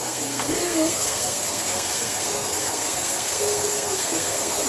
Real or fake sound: fake